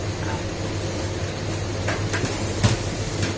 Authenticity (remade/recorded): recorded